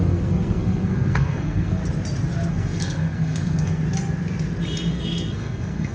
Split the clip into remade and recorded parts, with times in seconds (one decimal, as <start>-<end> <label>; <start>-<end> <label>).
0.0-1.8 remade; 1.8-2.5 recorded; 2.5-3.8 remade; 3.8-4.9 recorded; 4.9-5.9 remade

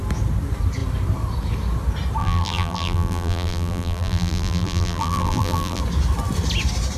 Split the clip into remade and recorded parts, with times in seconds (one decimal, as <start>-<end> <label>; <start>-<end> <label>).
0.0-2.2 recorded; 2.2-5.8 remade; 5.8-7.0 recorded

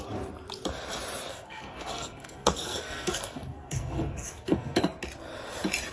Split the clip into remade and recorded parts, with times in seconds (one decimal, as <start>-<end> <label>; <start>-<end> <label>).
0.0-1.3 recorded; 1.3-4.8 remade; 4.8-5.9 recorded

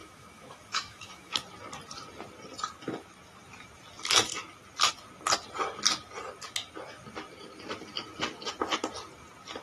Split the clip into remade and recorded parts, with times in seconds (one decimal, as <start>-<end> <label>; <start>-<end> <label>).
0.0-1.4 remade; 1.4-9.6 recorded

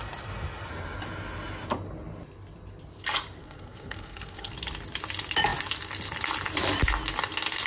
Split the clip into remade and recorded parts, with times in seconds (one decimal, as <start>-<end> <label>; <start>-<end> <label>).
0.0-3.4 recorded; 3.4-4.5 remade; 4.5-7.7 recorded

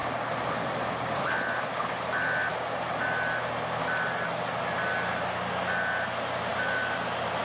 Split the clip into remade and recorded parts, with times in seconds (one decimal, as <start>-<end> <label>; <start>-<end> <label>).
0.0-7.4 recorded

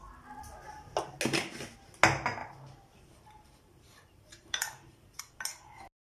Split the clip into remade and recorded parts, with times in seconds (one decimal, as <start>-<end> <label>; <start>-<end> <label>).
0.0-2.4 recorded; 2.4-5.2 remade; 5.2-6.0 recorded